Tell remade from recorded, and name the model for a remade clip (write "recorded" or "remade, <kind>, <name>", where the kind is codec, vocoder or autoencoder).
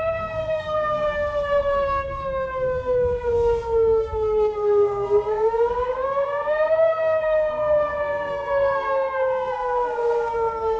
remade, codec, SNAC